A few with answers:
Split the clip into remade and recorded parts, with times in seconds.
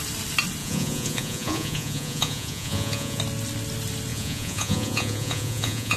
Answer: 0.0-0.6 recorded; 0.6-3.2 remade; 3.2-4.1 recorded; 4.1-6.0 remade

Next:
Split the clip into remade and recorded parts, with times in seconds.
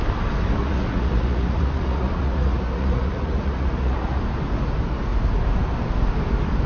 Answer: 0.0-0.6 recorded; 0.6-4.2 remade; 4.2-6.7 recorded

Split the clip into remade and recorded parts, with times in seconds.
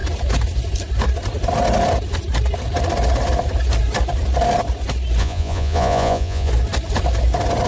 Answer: 0.0-5.2 recorded; 5.2-6.5 remade; 6.5-7.7 recorded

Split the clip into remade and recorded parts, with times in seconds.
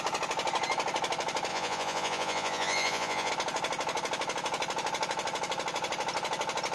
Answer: 0.0-1.5 recorded; 1.5-3.3 remade; 3.3-6.7 recorded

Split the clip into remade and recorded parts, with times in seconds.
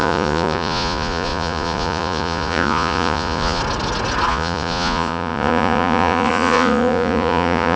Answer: 0.0-3.6 remade; 3.6-4.3 recorded; 4.3-7.8 remade